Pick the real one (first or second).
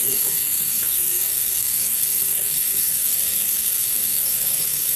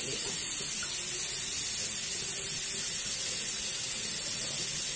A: second